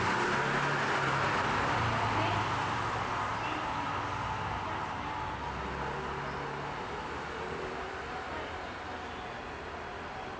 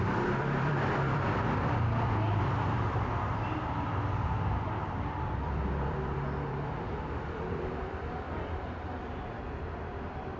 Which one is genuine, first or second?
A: first